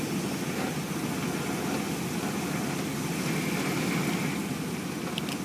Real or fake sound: real